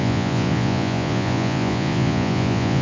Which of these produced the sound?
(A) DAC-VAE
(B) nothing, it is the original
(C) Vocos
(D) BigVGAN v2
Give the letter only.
C